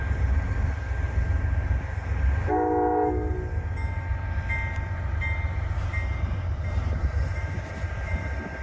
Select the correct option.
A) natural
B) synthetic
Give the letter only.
A